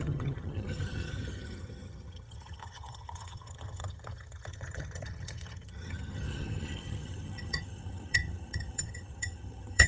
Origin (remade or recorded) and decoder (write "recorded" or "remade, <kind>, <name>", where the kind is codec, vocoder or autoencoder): remade, vocoder, HiFi-GAN